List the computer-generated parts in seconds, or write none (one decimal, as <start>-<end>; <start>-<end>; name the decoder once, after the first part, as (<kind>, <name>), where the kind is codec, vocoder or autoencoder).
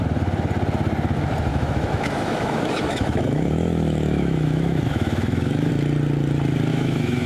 1.5-5.7 (autoencoder, DAC-VAE); 6.7-7.3